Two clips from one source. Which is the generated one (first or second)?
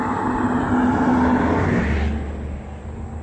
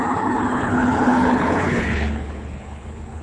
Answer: second